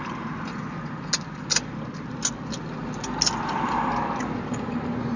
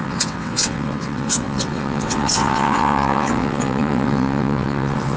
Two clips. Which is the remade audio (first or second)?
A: second